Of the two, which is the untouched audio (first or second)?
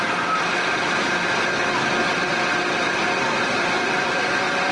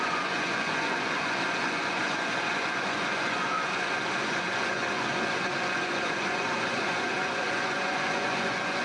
first